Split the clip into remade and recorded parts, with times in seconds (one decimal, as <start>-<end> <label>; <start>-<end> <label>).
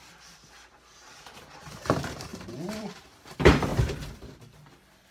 0.0-3.7 remade; 3.7-4.4 recorded; 4.4-5.1 remade